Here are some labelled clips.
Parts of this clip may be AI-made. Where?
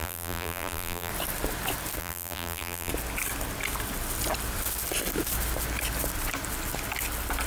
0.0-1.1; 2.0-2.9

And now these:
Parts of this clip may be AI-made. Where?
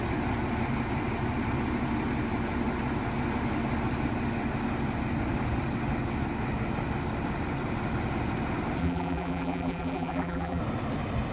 8.8-10.6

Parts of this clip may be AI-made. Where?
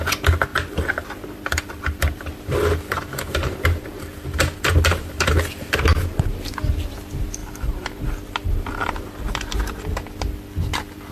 0.5-5.7; 7.4-9.2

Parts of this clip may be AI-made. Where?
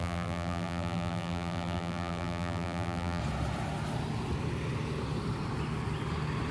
0.0-3.2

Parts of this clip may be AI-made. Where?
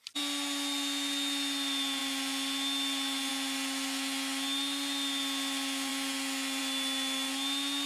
none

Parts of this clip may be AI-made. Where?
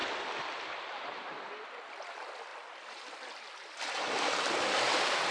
0.0-1.0; 2.5-4.8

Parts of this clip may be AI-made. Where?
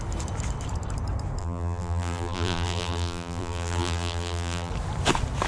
1.4-4.7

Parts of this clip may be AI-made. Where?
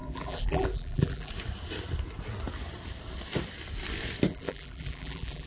0.0-1.3; 4.3-5.5